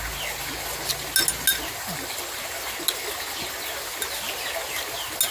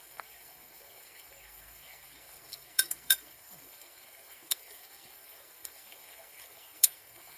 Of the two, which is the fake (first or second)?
second